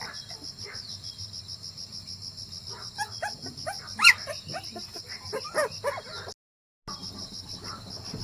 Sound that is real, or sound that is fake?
real